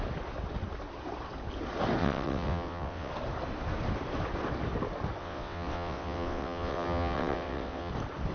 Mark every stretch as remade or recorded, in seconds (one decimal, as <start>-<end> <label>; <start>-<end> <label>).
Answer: 0.0-2.0 recorded; 2.0-3.1 remade; 3.1-5.2 recorded; 5.2-7.9 remade; 7.9-8.3 recorded